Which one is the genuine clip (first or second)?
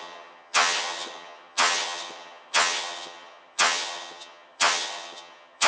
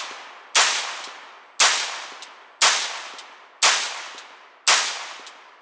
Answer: second